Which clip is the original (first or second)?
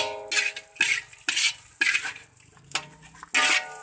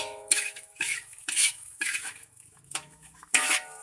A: first